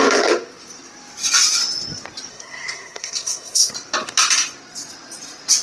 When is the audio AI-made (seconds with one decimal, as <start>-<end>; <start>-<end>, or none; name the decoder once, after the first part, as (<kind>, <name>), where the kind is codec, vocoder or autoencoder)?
2.3-3.7 (codec, SNAC)

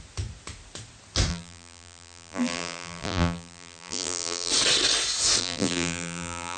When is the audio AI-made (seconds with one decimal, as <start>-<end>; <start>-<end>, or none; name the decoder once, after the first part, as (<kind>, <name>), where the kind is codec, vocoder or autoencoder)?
1.3-4.5 (vocoder, BigVGAN v2); 5.4-6.6